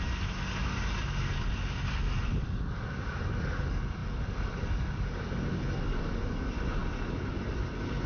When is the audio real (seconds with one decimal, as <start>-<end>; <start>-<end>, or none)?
0.0-8.1